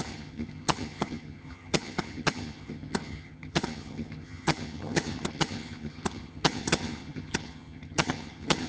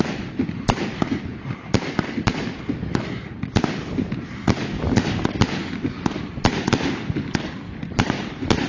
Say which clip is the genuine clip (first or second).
second